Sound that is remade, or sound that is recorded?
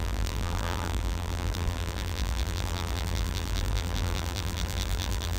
remade